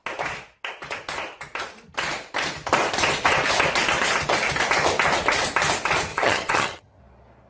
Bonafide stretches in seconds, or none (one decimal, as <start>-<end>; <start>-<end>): 0.0-6.1; 7.0-7.5